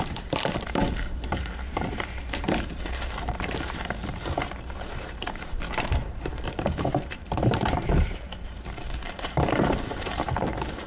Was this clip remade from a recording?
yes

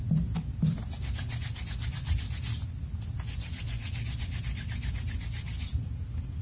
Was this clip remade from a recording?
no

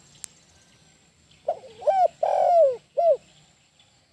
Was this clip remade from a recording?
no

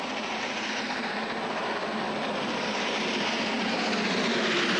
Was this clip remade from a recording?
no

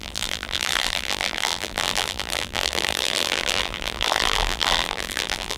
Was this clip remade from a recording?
yes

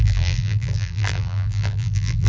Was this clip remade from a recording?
yes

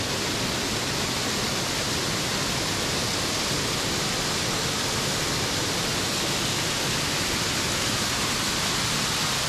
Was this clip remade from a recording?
no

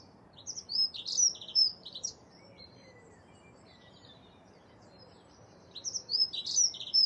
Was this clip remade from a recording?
yes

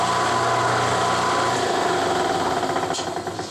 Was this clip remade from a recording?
no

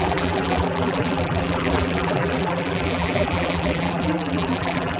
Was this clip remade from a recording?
yes